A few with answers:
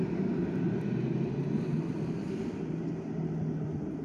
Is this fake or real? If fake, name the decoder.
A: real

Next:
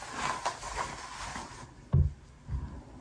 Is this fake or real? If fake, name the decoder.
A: real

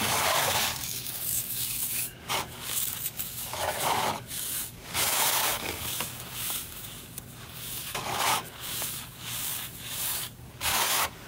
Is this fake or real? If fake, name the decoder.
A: fake, codec, DAC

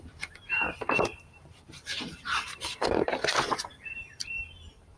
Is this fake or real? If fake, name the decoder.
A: fake, vocoder, BigVGAN v2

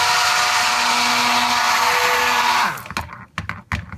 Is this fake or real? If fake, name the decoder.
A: real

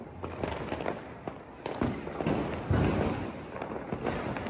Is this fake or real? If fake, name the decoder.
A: real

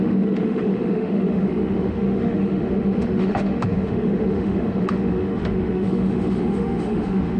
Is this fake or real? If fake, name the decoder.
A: fake, autoencoder, DAC-VAE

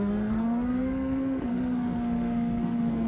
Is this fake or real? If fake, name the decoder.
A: fake, codec, SNAC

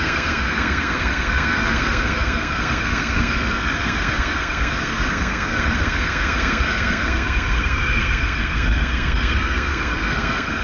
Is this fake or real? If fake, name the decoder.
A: fake, codec, SNAC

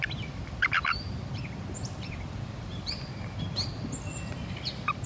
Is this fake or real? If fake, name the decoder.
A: fake, vocoder, BigVGAN v2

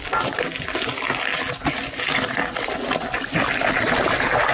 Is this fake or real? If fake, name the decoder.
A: real